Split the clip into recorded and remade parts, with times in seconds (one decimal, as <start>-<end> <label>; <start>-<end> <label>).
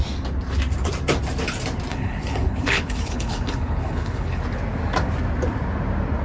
0.0-1.9 recorded; 1.9-4.4 remade; 4.4-6.2 recorded